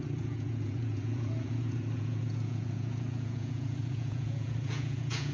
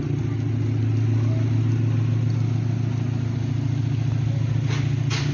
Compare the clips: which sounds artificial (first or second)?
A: first